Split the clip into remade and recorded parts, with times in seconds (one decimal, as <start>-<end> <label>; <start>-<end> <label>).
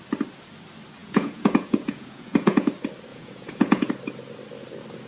0.0-1.0 recorded; 1.0-2.7 remade; 2.7-3.1 recorded; 3.1-3.9 remade; 3.9-5.1 recorded